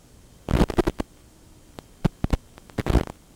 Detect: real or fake real